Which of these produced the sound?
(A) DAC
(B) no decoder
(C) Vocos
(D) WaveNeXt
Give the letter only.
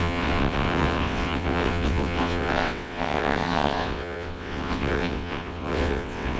D